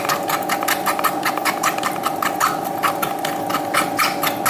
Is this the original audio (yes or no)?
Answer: yes